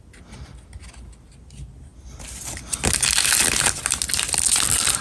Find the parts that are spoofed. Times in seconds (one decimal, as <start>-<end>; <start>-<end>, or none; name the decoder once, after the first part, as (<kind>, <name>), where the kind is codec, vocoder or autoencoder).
none